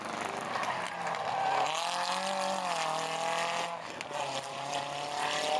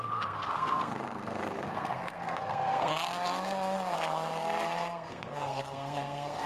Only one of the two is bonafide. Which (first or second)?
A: first